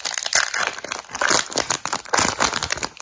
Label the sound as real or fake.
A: real